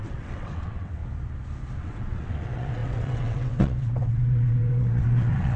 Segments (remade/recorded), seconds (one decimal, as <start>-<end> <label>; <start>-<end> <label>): 0.0-1.0 remade; 1.0-1.8 recorded; 1.8-5.6 remade